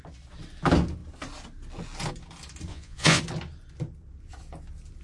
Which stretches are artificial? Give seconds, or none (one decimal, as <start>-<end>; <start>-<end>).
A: 2.7-3.2

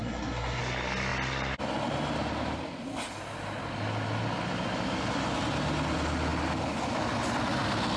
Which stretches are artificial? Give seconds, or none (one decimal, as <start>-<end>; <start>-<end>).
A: 0.0-0.6